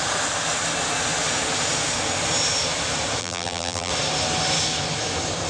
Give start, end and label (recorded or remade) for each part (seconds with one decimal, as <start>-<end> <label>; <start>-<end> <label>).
0.0-3.2 recorded; 3.2-3.9 remade; 3.9-5.5 recorded